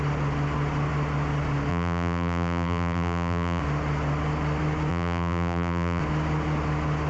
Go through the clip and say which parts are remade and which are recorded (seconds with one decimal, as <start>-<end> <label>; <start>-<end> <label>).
0.0-1.7 recorded; 1.7-3.6 remade; 3.6-4.9 recorded; 4.9-6.0 remade; 6.0-7.1 recorded